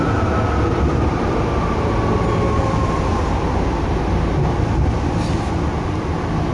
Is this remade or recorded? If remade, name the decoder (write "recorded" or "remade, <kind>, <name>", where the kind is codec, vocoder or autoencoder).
recorded